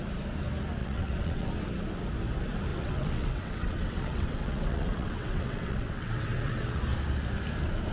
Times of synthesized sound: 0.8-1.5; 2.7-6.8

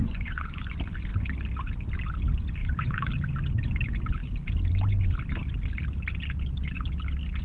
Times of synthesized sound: 0.0-0.7; 2.6-3.1